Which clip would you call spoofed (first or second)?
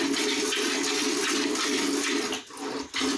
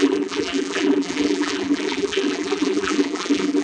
second